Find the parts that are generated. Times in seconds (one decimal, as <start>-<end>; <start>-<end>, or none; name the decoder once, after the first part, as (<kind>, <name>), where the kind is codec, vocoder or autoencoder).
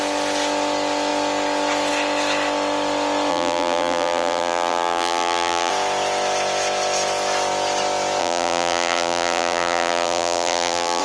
3.3-5.7 (vocoder, BigVGAN v2); 8.2-11.0